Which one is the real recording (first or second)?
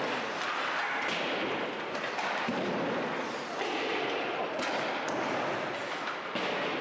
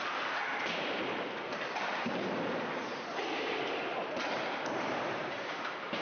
first